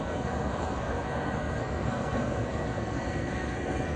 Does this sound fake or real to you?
fake